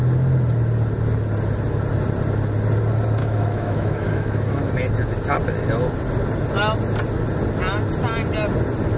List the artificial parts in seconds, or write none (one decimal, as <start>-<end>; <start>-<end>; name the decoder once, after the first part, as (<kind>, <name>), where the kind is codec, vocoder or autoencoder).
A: 3.2-4.7 (autoencoder, DAC-VAE)